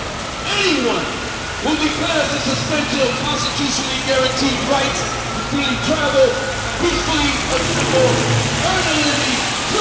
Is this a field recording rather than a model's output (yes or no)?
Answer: yes